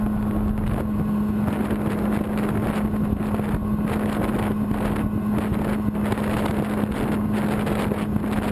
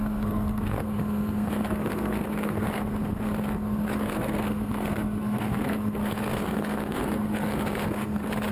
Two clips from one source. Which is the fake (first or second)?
second